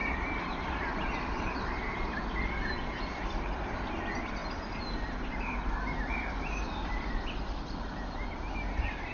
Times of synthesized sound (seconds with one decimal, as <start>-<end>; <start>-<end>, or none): 0.0-4.4; 6.0-9.1